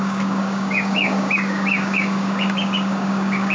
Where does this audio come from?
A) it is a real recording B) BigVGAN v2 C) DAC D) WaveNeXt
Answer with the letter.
C